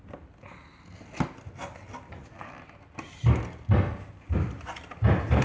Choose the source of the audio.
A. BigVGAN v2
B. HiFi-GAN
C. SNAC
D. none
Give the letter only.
D